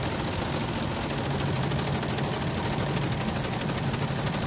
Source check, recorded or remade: recorded